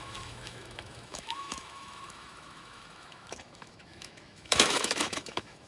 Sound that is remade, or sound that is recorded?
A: remade